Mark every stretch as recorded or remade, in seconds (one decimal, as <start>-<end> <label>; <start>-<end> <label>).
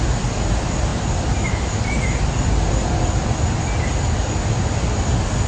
0.0-5.5 recorded